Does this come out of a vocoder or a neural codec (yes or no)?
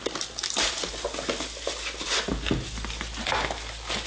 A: no